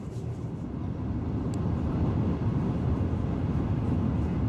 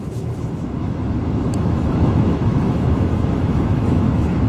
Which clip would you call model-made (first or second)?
second